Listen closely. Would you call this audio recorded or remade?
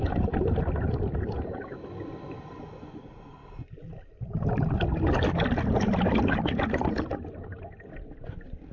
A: recorded